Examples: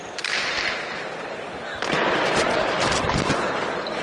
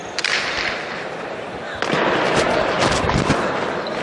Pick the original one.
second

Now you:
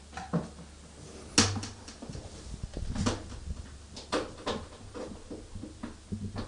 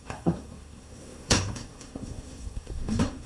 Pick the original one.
first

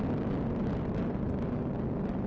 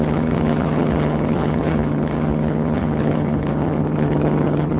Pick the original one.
first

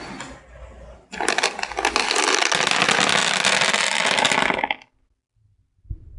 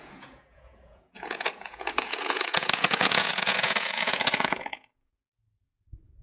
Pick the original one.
first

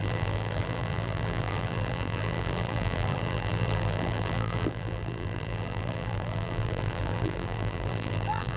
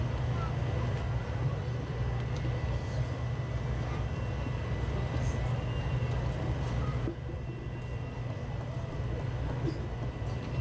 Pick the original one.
second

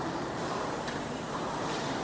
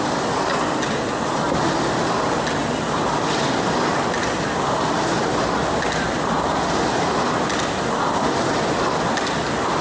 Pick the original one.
second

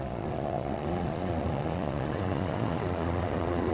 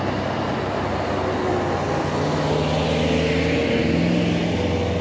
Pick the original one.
second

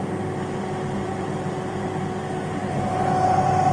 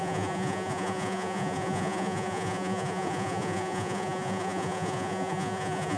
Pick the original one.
first